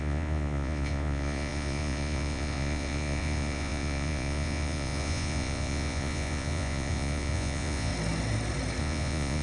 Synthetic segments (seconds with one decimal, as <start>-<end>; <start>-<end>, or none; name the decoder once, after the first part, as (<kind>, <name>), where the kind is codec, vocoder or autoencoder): 0.0-7.9 (vocoder, Vocos); 8.8-9.4